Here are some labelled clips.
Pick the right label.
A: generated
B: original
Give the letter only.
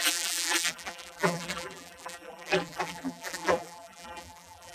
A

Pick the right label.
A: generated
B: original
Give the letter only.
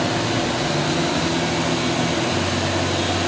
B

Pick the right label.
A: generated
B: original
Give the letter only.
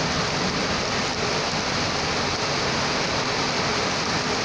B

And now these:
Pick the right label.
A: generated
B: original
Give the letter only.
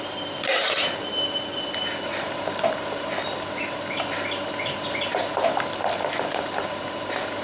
B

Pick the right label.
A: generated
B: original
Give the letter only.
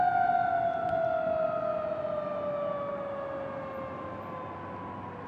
B